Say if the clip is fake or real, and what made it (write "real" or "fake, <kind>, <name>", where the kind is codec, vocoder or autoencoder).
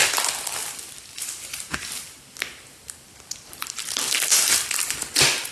real